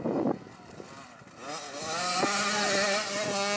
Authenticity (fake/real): real